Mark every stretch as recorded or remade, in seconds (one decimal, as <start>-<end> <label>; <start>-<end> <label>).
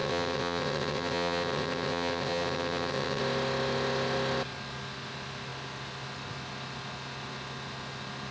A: 0.0-3.2 remade; 3.2-8.3 recorded